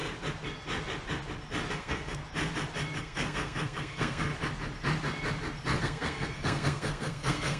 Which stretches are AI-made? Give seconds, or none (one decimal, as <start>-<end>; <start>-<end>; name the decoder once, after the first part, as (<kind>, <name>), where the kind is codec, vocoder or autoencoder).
1.7-2.2 (codec, SNAC); 3.0-4.3; 5.8-7.6